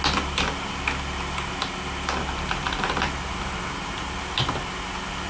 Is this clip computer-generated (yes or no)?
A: no